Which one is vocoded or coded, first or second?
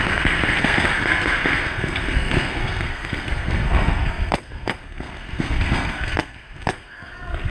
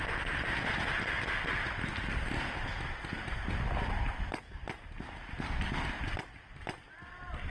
first